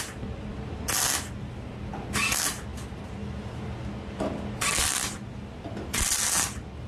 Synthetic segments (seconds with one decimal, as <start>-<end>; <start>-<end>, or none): none